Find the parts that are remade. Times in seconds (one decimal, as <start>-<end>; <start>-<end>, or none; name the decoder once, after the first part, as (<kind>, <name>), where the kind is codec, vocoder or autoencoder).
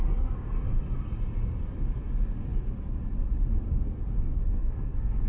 4.3-5.3 (codec, SNAC)